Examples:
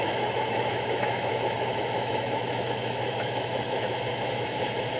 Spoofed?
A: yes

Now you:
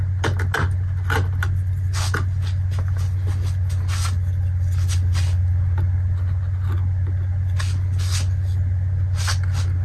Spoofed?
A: no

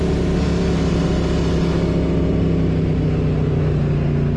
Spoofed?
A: no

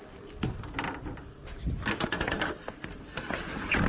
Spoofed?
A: no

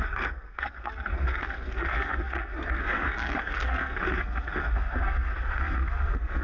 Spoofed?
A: yes